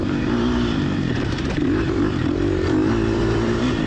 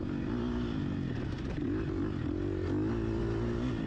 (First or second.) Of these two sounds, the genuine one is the second